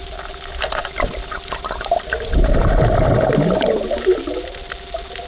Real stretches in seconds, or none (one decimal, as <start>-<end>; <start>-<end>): 0.0-5.3